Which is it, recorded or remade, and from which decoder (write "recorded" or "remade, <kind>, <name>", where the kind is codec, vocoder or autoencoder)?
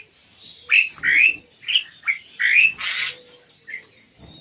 recorded